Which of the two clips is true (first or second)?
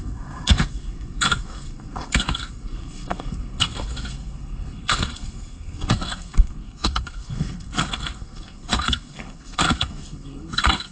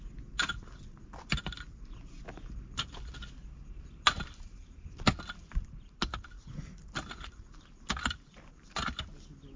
second